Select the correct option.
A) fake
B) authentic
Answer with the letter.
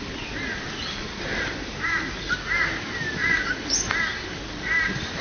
B